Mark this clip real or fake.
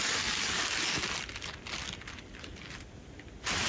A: real